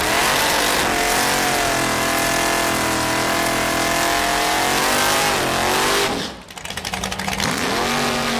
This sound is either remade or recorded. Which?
recorded